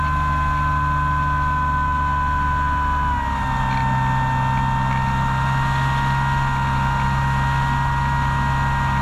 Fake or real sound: real